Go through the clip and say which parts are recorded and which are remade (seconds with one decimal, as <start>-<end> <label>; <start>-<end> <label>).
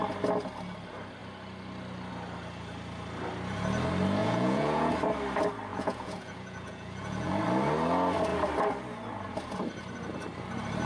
0.0-4.2 recorded; 4.2-4.9 remade; 4.9-5.7 recorded; 5.7-7.3 remade; 7.3-10.9 recorded